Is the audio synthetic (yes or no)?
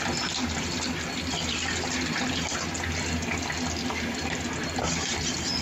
no